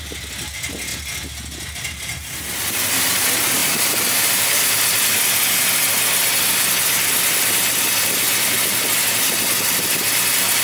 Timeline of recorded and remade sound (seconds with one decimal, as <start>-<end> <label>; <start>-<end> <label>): 0.0-3.6 recorded; 3.6-5.1 remade; 5.1-10.6 recorded